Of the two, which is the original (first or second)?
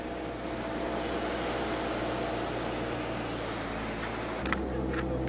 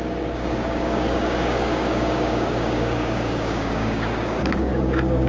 first